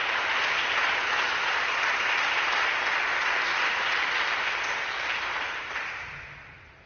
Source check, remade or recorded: recorded